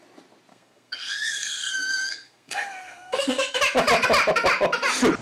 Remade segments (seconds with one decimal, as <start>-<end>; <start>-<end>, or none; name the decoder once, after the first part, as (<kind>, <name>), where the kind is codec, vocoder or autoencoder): 0.5-3.6 (codec, SNAC)